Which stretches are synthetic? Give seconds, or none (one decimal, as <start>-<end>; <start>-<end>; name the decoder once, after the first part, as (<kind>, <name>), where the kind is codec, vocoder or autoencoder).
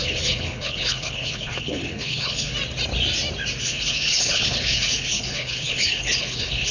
0.0-2.5 (codec, HILCodec); 3.6-6.7